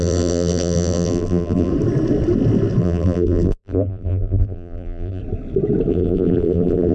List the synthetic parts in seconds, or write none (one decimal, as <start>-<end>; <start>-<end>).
0.0-1.7; 2.8-5.2; 5.9-6.9